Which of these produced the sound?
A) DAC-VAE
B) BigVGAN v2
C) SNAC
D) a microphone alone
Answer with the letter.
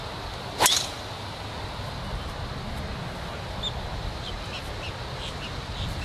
D